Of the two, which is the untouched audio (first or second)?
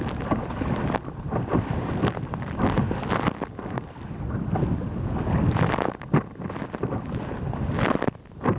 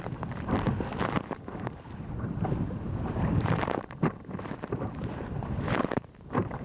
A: first